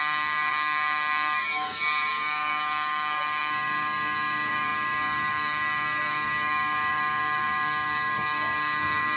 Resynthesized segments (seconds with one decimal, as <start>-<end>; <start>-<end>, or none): 0.0-9.2